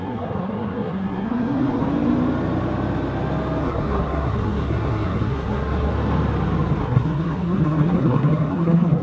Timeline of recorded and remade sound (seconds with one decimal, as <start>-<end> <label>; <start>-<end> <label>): 0.0-1.8 remade; 1.8-3.6 recorded; 3.6-5.9 remade; 5.9-6.8 recorded; 6.8-9.0 remade